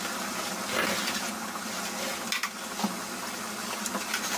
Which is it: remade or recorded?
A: recorded